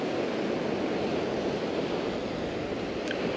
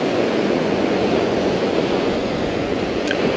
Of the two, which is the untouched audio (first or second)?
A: first